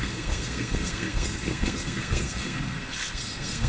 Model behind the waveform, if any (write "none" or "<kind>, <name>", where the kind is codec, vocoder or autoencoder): codec, SNAC